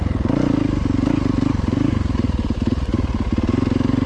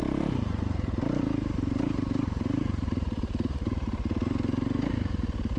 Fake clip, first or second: second